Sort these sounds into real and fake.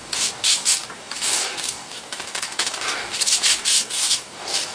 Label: fake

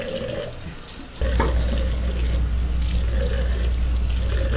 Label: real